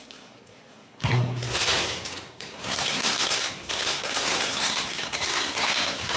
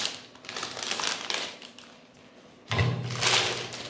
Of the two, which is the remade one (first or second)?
first